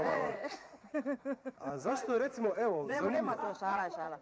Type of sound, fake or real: fake